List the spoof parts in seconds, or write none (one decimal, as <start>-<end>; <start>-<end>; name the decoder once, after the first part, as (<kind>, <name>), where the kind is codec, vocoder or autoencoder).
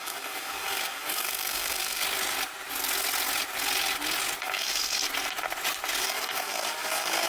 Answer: 0.0-2.0 (codec, DAC); 4.4-5.0; 6.0-7.3